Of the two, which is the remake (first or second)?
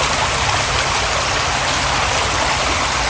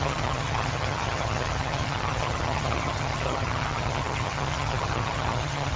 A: second